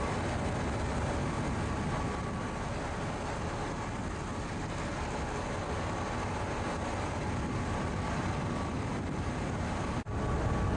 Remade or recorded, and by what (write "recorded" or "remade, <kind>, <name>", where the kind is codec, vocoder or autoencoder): recorded